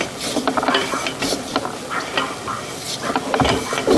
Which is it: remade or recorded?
recorded